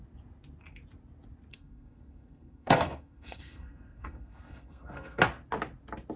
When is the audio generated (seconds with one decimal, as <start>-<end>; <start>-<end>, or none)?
1.5-5.2